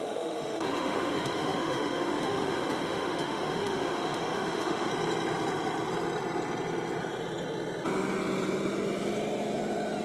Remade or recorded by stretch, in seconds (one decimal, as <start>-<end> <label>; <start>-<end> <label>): 0.0-4.9 remade; 4.9-10.0 recorded